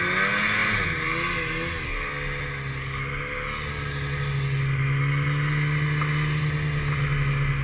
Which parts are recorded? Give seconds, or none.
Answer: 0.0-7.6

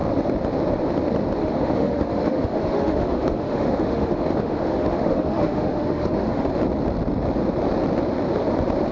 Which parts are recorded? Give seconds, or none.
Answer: 0.0-1.4; 6.5-8.9

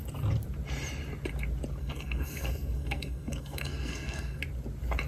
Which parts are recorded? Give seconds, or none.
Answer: 0.0-1.8; 4.4-5.1

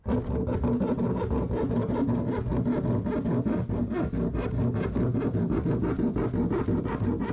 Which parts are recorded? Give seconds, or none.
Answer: 0.0-7.3

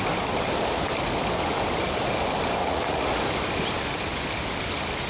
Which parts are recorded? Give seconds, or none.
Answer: 0.0-2.6; 3.1-5.1